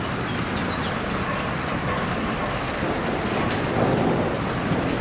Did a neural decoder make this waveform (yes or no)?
no